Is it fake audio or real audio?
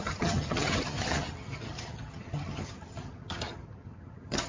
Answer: fake